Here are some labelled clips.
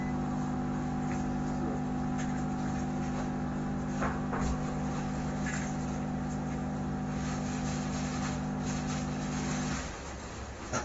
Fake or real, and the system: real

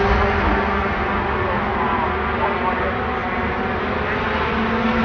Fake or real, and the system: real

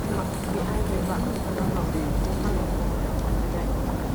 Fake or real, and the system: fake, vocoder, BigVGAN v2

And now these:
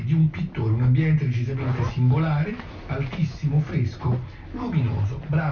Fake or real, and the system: real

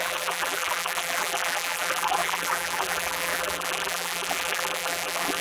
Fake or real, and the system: fake, vocoder, BigVGAN v2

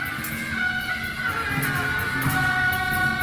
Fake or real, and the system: real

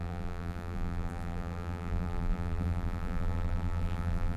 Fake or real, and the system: fake, vocoder, BigVGAN v2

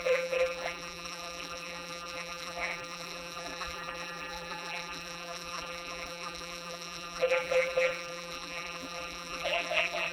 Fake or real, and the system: fake, vocoder, BigVGAN v2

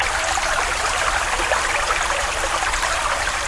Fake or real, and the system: fake, vocoder, BigVGAN v2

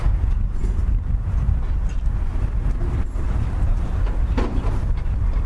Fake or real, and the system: real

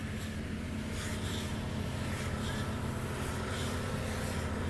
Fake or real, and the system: real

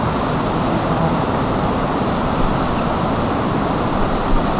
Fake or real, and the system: real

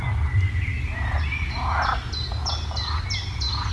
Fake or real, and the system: real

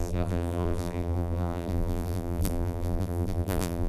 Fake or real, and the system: fake, vocoder, BigVGAN v2